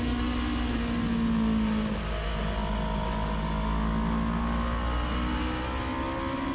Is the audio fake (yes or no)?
no